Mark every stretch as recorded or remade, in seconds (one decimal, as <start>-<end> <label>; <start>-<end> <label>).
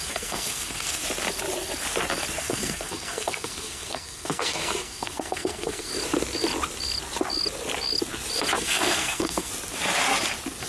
0.0-1.0 remade; 1.0-2.4 recorded; 2.4-5.9 remade; 5.9-8.6 recorded; 8.6-9.5 remade; 9.5-10.7 recorded